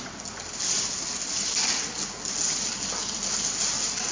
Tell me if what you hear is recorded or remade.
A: recorded